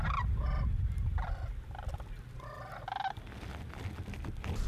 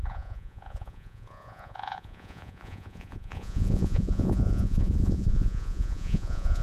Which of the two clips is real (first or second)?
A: first